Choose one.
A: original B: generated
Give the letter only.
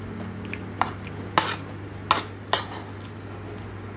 A